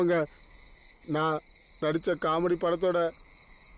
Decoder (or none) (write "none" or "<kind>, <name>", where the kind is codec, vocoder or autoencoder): none